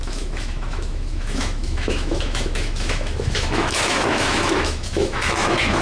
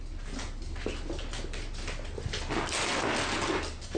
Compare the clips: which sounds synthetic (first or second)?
first